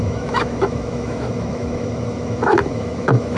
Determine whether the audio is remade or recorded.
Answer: remade